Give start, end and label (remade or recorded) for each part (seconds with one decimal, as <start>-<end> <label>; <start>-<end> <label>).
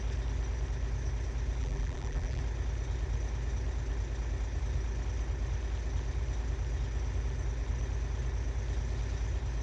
0.0-1.6 recorded; 1.6-2.4 remade; 2.4-9.6 recorded